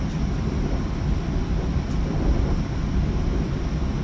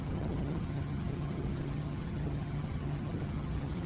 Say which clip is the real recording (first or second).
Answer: first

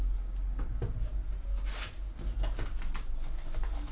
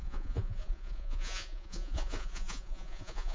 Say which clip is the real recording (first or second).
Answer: first